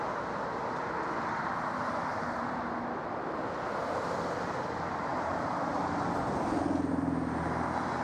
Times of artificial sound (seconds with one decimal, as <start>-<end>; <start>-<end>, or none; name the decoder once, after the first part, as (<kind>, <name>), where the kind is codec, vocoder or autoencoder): 2.1-2.6 (vocoder, BigVGAN v2)